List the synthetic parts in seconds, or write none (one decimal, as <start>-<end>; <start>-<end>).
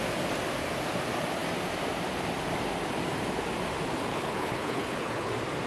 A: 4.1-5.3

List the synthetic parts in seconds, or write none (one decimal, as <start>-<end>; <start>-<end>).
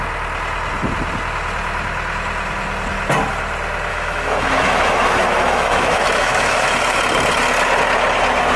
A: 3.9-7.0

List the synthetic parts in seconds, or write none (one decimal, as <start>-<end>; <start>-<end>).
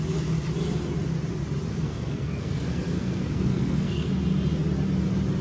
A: 1.7-4.1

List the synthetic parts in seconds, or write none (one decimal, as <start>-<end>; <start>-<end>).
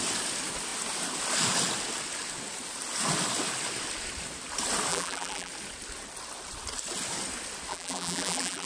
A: 4.9-5.5; 7.7-8.7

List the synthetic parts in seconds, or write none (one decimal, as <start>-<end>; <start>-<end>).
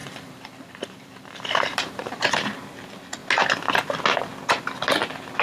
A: 0.0-2.2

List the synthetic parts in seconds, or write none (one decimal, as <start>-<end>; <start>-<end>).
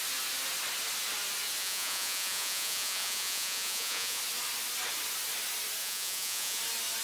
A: 1.6-4.2; 5.8-6.6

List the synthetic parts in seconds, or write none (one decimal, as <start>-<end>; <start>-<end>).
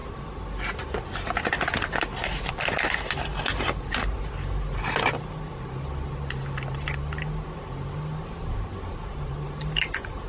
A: none